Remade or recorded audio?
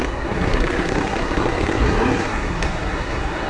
remade